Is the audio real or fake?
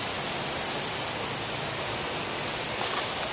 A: real